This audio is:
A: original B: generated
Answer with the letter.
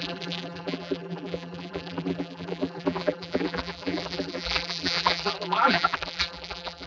B